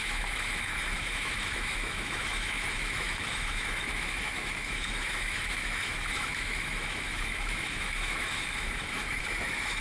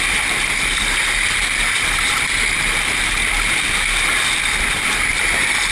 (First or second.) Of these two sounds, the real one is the second